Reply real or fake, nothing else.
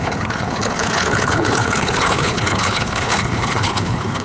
fake